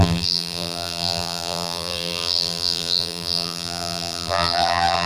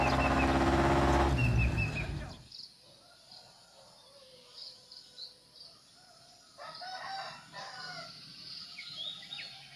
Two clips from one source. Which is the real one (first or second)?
second